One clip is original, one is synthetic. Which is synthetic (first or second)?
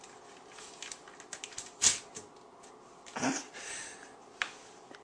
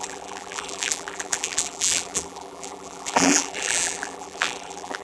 second